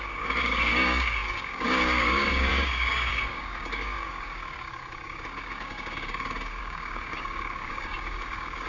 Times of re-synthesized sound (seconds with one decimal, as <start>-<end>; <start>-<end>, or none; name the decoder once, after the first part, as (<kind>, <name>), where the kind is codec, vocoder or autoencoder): 0.0-8.7 (codec, DAC)